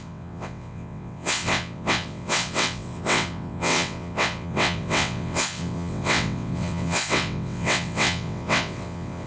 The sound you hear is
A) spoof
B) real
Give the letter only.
A